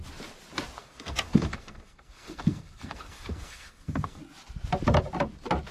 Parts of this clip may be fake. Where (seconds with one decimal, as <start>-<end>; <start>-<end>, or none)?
0.8-4.2